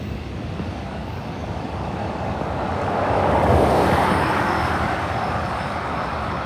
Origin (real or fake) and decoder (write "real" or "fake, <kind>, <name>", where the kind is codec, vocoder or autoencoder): fake, codec, DAC